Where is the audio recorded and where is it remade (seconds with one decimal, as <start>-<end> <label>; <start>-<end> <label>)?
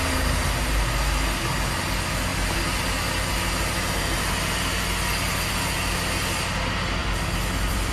0.0-7.0 recorded; 7.0-7.9 remade